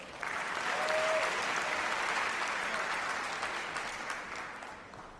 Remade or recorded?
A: recorded